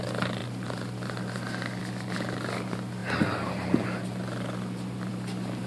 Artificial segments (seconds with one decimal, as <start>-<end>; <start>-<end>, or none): 0.4-1.8; 3.0-3.5; 5.1-5.7